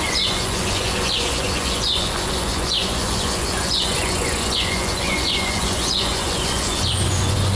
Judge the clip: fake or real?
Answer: fake